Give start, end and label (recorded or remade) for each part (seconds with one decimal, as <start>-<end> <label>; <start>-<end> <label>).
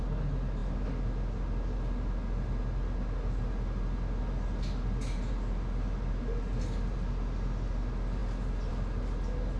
0.0-9.6 recorded